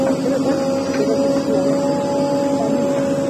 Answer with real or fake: real